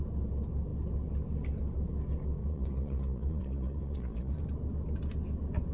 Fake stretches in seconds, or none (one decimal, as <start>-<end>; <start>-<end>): 2.4-4.4